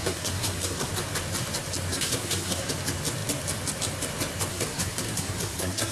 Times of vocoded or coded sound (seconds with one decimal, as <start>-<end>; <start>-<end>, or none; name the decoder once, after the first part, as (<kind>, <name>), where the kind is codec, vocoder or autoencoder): 0.0-0.9 (codec, SNAC); 1.9-2.7; 4.5-5.9